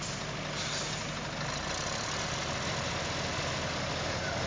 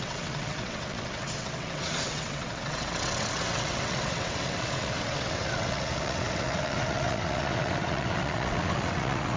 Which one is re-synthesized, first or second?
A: second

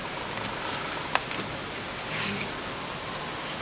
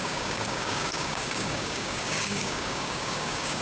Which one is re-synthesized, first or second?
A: second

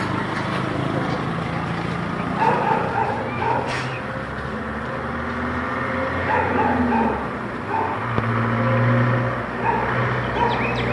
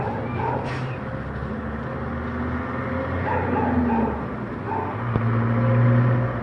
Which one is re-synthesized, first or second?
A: first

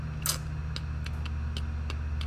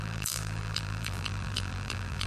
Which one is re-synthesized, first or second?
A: second